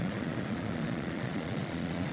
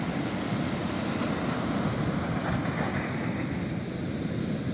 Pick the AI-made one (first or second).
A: first